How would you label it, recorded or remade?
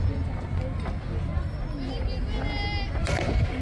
recorded